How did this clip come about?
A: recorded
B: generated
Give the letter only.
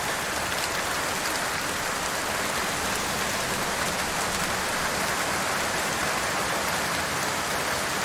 A